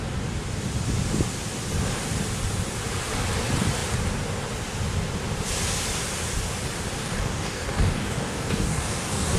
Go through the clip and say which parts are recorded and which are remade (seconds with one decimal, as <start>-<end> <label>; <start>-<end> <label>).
0.0-7.0 recorded; 7.0-9.4 remade